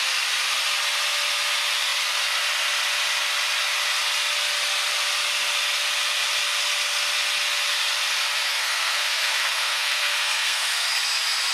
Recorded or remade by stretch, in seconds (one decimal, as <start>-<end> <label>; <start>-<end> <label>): 0.0-8.5 recorded; 8.5-11.0 remade; 11.0-11.5 recorded